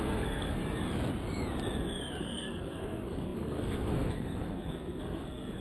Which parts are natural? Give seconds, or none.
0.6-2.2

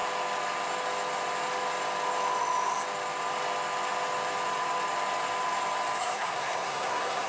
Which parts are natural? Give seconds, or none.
0.0-6.0

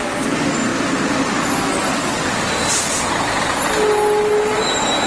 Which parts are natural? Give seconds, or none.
0.0-5.1

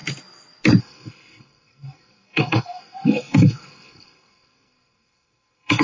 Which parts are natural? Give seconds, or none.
0.0-0.8

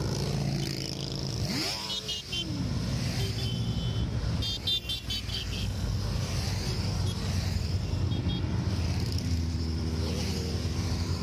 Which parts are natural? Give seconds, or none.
0.0-5.3; 6.0-11.2

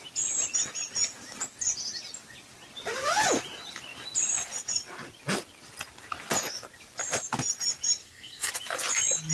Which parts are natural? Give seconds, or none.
0.0-8.0; 8.5-9.3

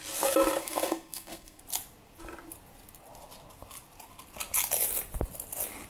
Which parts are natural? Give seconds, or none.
0.0-0.6; 1.6-5.9

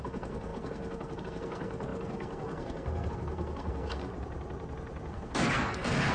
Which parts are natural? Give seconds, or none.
4.1-5.1